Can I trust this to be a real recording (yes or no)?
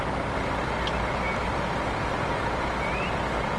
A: yes